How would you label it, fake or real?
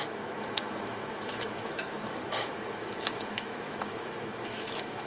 fake